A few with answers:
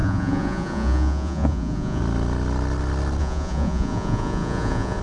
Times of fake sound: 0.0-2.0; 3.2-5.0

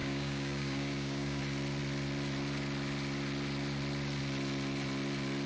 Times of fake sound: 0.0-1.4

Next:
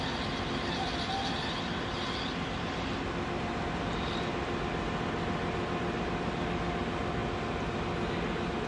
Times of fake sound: none

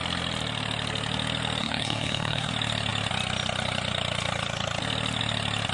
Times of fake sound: 1.6-2.5

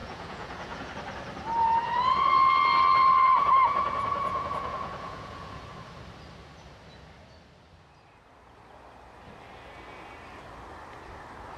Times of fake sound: 0.0-0.9; 3.0-5.6

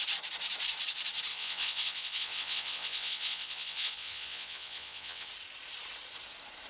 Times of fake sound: 1.3-5.3